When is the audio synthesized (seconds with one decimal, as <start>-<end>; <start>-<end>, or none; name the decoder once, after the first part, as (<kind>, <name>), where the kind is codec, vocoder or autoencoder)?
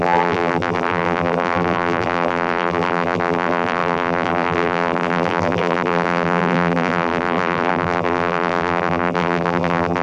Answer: 0.0-10.0 (vocoder, BigVGAN v2)